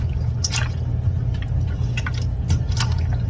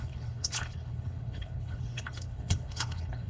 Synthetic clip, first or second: second